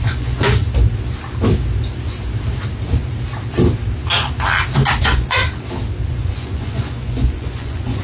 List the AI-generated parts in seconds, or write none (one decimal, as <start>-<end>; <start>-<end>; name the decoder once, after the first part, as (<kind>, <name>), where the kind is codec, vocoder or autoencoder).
0.0-0.6 (vocoder, Vocos); 5.0-5.4; 6.1-8.0

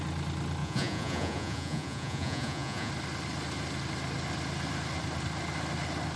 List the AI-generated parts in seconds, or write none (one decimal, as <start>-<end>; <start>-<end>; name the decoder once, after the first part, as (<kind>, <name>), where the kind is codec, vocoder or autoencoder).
0.6-2.9 (vocoder, Vocos)

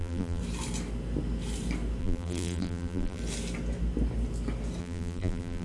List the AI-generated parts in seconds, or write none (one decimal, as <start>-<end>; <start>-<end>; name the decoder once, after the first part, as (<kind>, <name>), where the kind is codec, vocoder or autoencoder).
0.0-0.4 (vocoder, BigVGAN v2); 2.0-3.2; 4.8-5.6

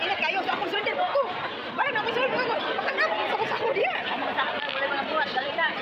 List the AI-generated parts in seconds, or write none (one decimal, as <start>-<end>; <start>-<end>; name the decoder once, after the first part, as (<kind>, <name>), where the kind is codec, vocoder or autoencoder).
none

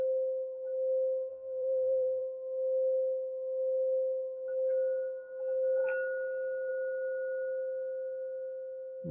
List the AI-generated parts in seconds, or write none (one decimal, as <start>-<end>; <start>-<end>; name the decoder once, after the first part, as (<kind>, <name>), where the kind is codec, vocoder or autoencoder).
1.3-2.2 (vocoder, BigVGAN v2)

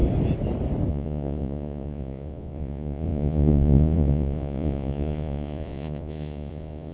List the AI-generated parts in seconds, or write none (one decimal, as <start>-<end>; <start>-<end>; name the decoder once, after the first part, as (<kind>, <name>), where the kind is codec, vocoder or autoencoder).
0.9-6.9 (vocoder, Vocos)

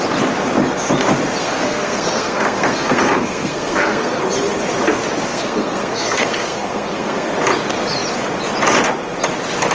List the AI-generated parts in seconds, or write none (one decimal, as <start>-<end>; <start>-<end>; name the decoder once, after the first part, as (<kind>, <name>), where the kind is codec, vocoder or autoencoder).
1.4-4.2 (codec, SNAC); 5.3-7.3

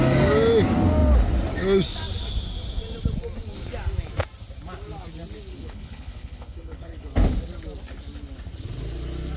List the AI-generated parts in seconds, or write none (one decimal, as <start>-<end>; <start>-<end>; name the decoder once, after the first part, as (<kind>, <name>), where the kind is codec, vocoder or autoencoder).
5.5-7.1 (codec, HILCodec)